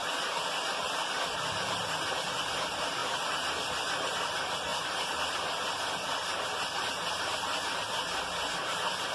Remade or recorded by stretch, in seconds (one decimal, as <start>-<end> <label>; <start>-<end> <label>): 0.0-9.1 remade